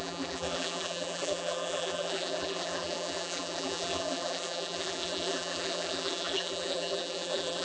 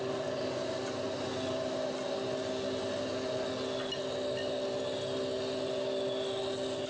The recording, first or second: second